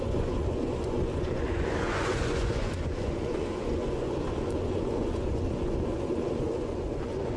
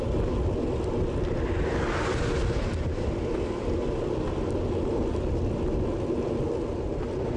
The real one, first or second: second